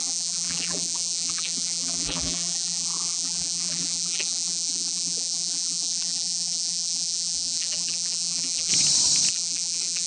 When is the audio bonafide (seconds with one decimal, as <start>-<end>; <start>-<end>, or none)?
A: 8.7-9.3